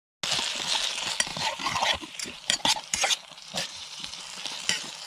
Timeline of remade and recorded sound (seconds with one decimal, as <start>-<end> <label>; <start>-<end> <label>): 0.0-1.3 recorded; 1.3-4.2 remade; 4.2-5.1 recorded